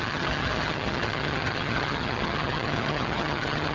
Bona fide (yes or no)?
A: no